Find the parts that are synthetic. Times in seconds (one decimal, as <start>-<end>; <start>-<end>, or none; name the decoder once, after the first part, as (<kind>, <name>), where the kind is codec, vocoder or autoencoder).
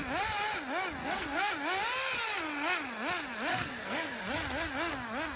1.0-1.5 (codec, SNAC); 3.5-4.2